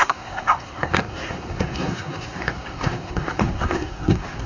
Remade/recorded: remade